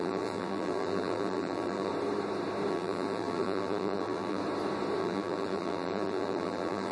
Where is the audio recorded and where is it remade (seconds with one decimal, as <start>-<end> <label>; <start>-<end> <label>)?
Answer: 0.0-1.9 remade; 1.9-2.7 recorded; 2.7-4.4 remade; 4.4-5.0 recorded; 5.0-6.9 remade